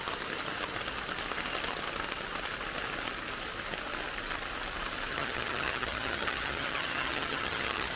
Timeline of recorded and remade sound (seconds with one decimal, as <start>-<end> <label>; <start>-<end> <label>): 0.0-5.1 recorded; 5.1-8.0 remade